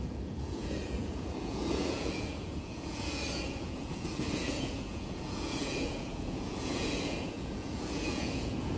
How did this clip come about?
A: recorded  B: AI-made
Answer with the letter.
B